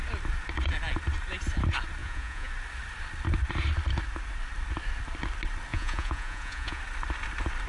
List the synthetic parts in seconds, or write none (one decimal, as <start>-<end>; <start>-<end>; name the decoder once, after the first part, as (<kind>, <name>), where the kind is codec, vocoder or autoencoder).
2.0-2.5 (vocoder, Vocos); 5.7-6.8